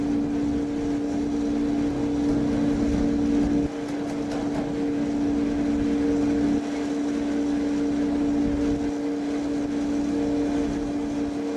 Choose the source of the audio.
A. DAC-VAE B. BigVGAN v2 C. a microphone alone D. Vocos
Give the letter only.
C